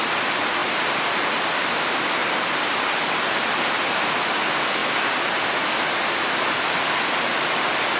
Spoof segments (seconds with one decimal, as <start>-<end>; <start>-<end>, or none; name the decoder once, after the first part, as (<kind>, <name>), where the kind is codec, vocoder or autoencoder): none